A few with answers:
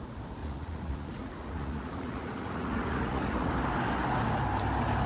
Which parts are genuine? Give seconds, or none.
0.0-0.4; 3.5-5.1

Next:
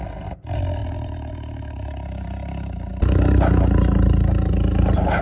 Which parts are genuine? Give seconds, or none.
0.0-5.2

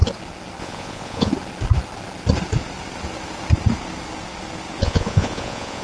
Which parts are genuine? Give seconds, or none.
0.0-0.6; 1.3-4.8

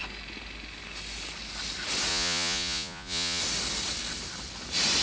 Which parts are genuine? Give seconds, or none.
0.0-2.1; 3.4-5.0

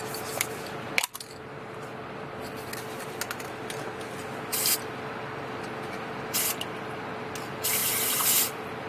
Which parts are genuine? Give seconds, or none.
0.0-8.9

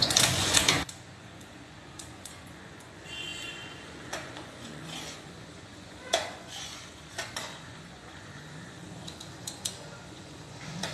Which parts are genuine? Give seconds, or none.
none